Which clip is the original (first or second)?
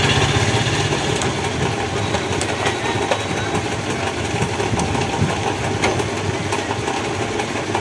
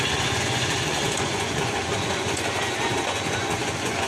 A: first